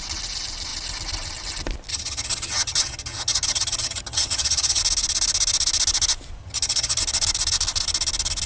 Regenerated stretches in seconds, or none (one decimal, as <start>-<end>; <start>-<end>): 1.9-4.8; 6.4-7.0